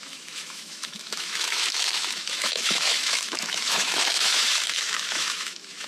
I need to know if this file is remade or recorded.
remade